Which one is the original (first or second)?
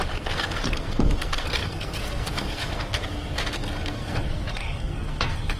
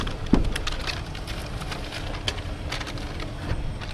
second